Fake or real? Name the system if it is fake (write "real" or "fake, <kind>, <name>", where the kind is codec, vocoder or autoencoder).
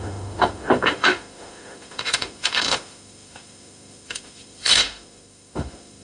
fake, autoencoder, DAC-VAE